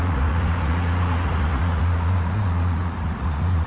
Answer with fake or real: fake